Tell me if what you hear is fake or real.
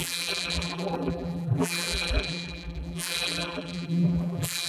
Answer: fake